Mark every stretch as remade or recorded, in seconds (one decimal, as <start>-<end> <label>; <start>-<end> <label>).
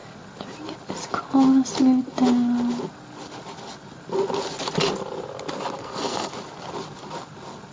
0.0-5.8 recorded; 5.8-6.3 remade; 6.3-7.7 recorded